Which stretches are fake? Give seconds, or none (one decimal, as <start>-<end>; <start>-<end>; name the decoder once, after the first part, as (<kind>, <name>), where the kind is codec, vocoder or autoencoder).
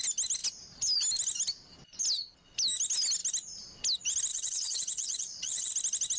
4.3-5.7 (vocoder, WaveNeXt)